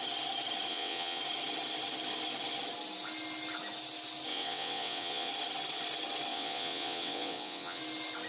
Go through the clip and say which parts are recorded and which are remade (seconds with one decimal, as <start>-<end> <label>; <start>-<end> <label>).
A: 0.0-0.7 recorded; 0.7-1.2 remade; 1.2-4.3 recorded; 4.3-5.3 remade; 5.3-6.3 recorded; 6.3-7.8 remade; 7.8-8.3 recorded